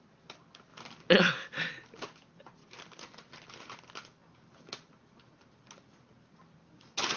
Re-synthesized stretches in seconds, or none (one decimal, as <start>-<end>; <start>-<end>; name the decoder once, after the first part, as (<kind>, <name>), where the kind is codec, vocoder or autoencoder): none